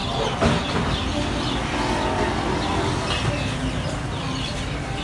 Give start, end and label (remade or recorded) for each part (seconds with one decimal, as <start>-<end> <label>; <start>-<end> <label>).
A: 0.0-5.0 recorded